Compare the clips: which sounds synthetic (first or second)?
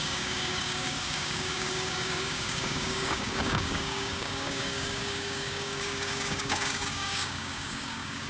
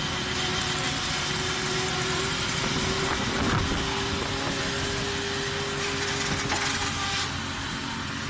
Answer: first